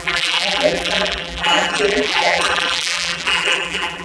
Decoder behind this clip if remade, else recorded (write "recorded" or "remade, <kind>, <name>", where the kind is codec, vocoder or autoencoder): remade, vocoder, BigVGAN v2